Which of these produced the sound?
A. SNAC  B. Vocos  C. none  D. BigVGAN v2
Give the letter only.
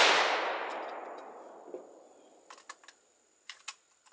C